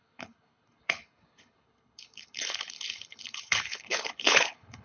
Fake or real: fake